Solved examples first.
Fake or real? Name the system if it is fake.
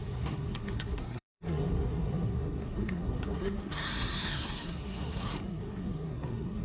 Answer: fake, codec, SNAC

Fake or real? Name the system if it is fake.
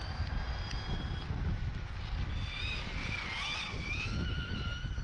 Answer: real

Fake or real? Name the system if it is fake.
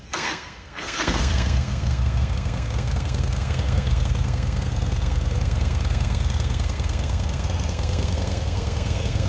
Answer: fake, codec, SNAC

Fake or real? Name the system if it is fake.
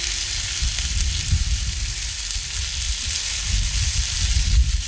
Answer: real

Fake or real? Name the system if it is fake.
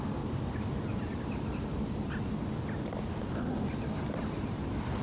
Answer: real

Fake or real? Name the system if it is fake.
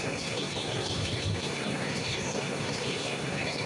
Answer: fake, codec, SNAC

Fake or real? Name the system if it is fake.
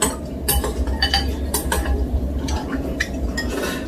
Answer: real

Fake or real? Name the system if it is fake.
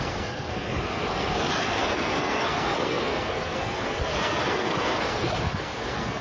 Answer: fake, codec, SNAC